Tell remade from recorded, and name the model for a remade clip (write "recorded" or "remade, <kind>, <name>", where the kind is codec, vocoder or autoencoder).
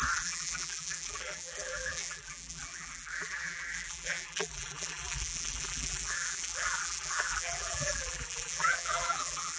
remade, vocoder, BigVGAN v2